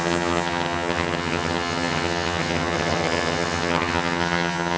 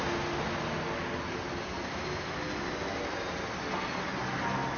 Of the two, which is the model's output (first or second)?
first